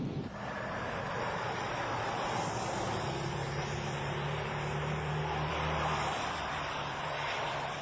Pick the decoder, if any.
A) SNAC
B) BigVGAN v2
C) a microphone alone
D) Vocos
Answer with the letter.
B